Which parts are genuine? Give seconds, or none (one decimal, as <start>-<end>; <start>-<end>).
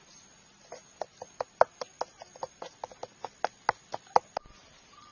0.0-5.1